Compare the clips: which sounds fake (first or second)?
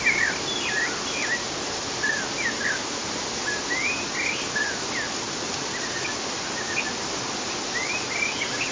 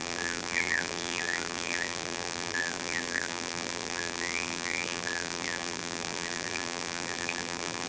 second